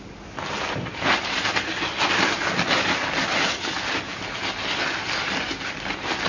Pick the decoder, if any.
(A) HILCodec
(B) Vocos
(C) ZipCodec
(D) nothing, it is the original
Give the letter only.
D